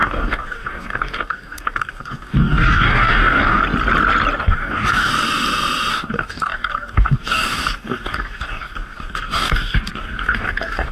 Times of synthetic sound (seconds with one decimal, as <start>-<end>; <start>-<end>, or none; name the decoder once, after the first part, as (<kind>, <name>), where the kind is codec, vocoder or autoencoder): 0.0-3.6 (codec, DAC); 4.4-5.1; 5.9-10.9